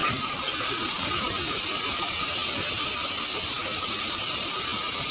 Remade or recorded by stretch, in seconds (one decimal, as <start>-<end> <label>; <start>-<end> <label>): 0.0-3.1 remade; 3.1-3.6 recorded; 3.6-4.4 remade; 4.4-5.1 recorded